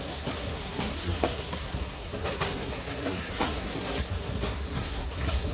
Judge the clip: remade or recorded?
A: remade